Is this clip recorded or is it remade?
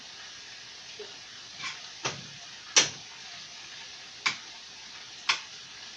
recorded